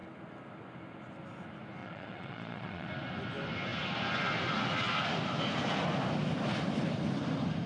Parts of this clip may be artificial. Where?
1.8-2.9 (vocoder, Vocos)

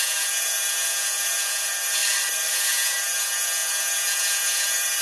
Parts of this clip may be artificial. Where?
0.0-2.0 (vocoder, Vocos); 2.5-5.0

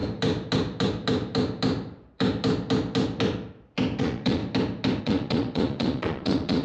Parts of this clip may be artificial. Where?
4.0-4.4 (vocoder, Vocos); 5.0-6.6

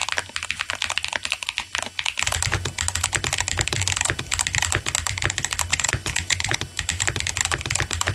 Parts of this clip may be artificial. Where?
5.7-6.6 (vocoder, Vocos)

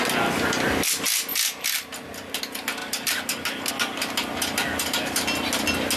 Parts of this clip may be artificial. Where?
none

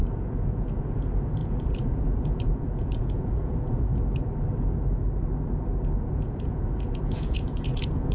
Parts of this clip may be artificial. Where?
0.0-3.9 (vocoder, Vocos); 6.0-8.1

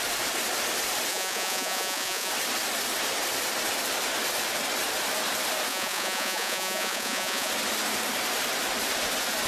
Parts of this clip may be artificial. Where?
1.1-2.3 (vocoder, Vocos); 5.7-7.5

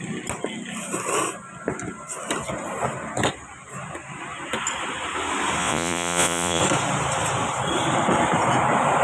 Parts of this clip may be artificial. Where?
5.6-6.6 (vocoder, Vocos)